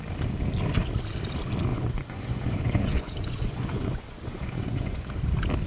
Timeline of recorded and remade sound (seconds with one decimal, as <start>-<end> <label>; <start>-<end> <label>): 0.0-1.7 recorded; 1.7-5.1 remade; 5.1-5.7 recorded